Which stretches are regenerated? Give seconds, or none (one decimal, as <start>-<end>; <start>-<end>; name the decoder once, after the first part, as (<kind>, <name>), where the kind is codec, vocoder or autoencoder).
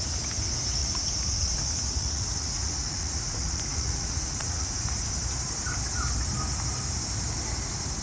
0.8-4.9 (vocoder, Vocos)